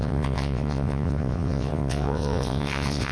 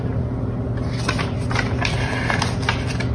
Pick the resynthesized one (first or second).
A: first